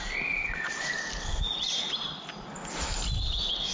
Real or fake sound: real